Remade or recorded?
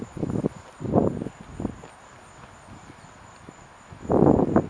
recorded